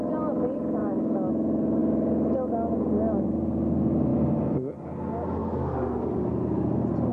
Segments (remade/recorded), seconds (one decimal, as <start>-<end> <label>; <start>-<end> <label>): 0.0-0.8 recorded; 0.8-1.3 remade; 1.3-5.4 recorded; 5.4-6.1 remade; 6.1-7.1 recorded